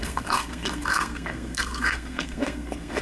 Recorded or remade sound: remade